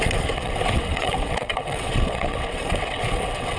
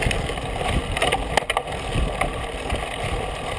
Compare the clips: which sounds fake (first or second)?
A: first